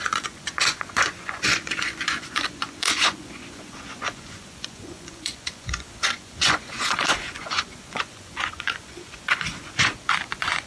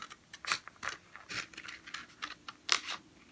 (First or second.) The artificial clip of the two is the first